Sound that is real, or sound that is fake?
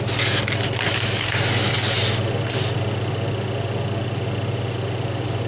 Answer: real